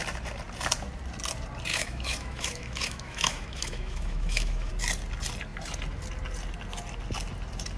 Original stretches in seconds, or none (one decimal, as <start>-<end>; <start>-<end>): 0.0-1.7; 4.7-7.8